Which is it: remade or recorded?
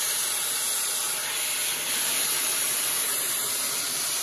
recorded